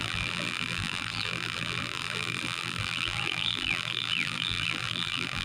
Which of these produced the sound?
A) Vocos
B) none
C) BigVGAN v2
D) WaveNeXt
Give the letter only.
C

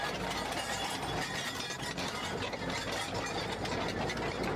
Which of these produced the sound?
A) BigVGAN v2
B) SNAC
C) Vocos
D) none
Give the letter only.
D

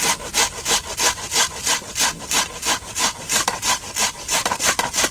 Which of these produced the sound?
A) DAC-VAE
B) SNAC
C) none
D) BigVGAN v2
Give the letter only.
C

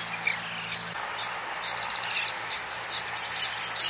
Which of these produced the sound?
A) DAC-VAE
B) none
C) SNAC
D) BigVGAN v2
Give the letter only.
B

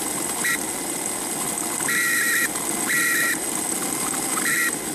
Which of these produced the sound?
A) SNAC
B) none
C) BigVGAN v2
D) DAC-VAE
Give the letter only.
B